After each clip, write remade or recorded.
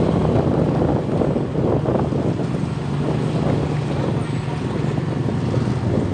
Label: recorded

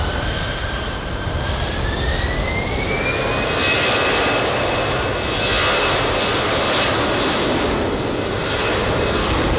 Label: recorded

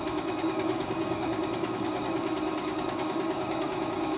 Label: remade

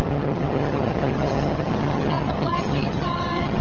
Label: remade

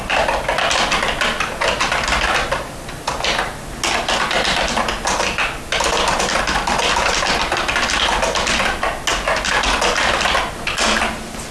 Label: recorded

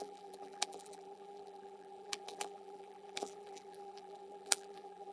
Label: remade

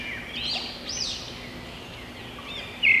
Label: recorded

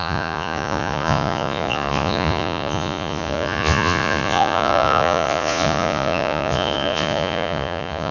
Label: remade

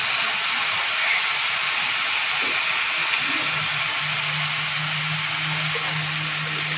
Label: recorded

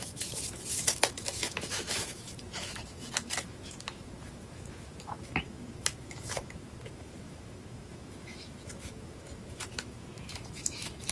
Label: remade